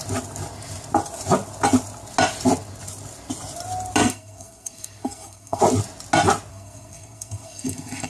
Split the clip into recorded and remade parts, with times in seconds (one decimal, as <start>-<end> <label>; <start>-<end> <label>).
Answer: 0.0-4.0 recorded; 4.0-5.6 remade; 5.6-6.5 recorded; 6.5-8.1 remade